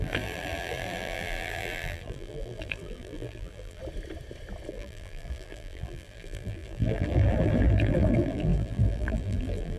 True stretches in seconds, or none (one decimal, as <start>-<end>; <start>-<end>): 3.8-4.7